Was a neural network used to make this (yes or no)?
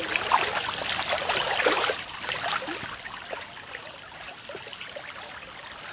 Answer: no